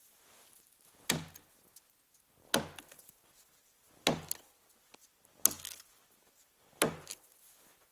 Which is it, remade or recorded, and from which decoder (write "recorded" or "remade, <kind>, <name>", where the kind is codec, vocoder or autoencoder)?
recorded